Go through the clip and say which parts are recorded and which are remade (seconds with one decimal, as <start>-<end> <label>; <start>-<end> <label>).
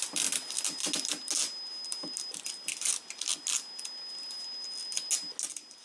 0.0-5.8 recorded